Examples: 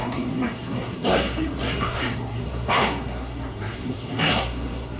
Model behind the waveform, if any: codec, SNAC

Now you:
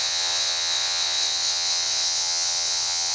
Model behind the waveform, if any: vocoder, WaveNeXt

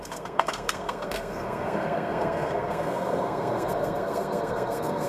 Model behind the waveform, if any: codec, SNAC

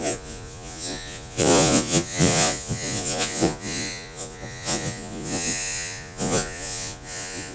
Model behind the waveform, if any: vocoder, Vocos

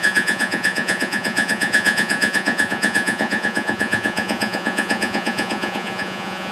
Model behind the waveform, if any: vocoder, Vocos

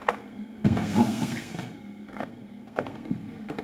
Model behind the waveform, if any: codec, SNAC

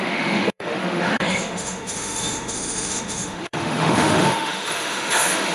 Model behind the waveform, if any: autoencoder, DAC-VAE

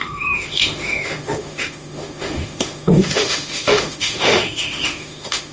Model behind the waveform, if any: autoencoder, DAC-VAE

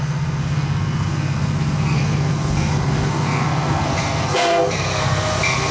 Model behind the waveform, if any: codec, SNAC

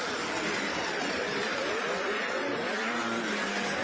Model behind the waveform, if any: vocoder, BigVGAN v2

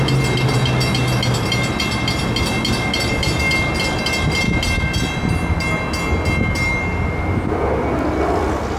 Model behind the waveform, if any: none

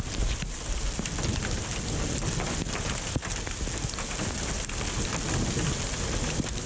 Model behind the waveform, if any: none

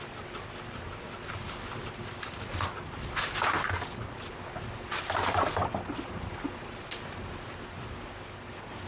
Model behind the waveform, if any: none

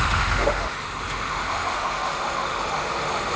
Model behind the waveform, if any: autoencoder, DAC-VAE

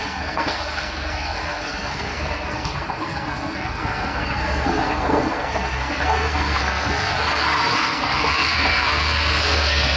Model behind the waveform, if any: codec, SNAC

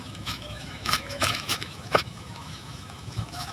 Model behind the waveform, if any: autoencoder, DAC-VAE